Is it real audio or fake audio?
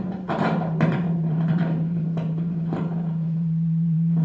fake